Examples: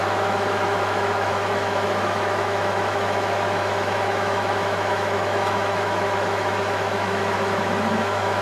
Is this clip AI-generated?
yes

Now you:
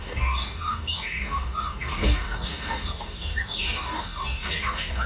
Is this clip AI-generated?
yes